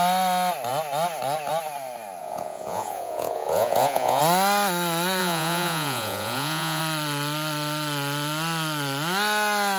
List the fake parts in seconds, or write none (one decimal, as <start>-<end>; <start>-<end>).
2.2-4.2; 5.2-6.8